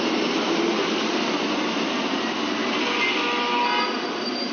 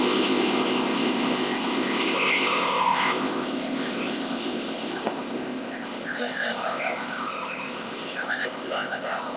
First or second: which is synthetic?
second